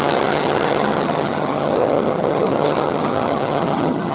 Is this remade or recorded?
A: remade